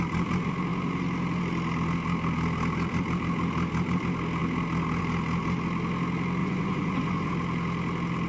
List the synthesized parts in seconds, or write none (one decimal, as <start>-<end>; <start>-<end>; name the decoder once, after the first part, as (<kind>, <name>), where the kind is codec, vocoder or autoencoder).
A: 6.4-7.3 (vocoder, Vocos)